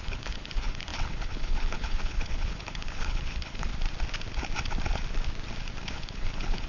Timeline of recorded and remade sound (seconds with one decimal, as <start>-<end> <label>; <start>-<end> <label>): 0.0-3.7 remade; 3.7-5.9 recorded; 5.9-6.7 remade